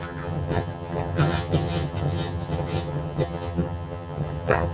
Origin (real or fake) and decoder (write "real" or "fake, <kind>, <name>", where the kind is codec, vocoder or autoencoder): fake, vocoder, HiFi-GAN